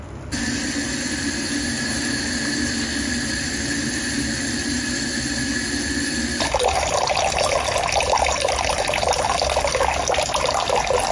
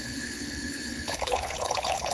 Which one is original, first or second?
first